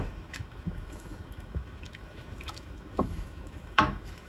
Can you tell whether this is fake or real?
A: fake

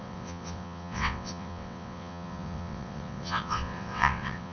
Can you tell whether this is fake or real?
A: fake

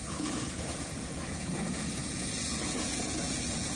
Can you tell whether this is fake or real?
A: fake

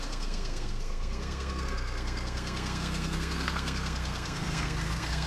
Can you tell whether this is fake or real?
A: fake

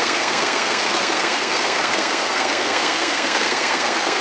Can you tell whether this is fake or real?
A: fake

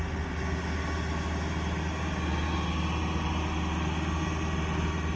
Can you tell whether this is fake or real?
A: real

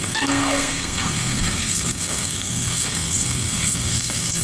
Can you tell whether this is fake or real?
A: fake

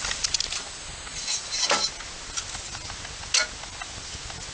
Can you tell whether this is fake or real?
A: real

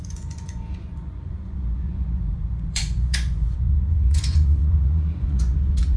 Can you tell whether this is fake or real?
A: fake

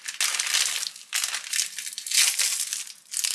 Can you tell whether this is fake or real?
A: real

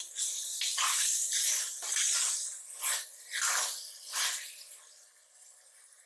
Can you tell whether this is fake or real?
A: real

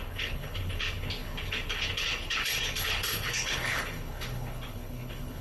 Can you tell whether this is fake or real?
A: fake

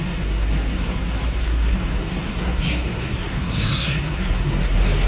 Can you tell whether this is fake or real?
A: fake